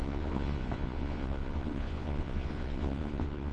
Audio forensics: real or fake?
fake